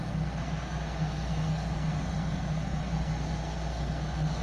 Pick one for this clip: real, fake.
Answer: fake